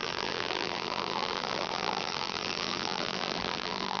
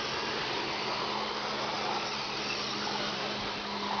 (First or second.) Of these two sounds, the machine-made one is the first